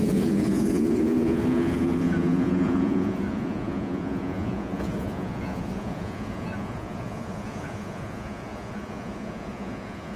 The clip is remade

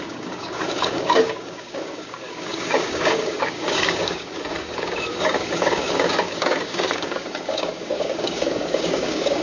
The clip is remade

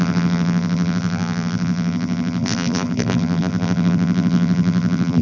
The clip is remade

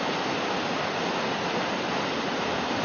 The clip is recorded